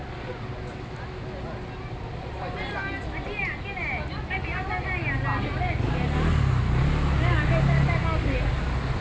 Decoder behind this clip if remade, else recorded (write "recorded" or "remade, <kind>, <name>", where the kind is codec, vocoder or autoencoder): recorded